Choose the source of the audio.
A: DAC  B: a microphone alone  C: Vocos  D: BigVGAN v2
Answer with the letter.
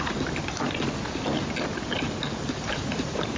B